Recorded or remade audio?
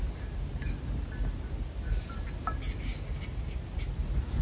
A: recorded